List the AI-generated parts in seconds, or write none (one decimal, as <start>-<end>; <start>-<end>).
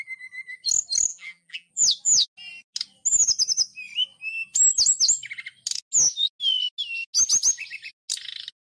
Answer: 1.1-1.7